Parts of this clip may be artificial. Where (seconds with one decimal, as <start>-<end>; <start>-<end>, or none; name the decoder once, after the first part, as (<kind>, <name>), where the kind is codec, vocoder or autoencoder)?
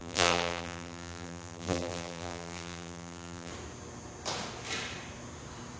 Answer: 0.0-3.5 (vocoder, BigVGAN v2)